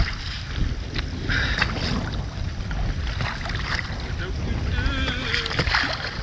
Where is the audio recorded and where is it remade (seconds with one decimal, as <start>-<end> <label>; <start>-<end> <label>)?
0.0-6.2 recorded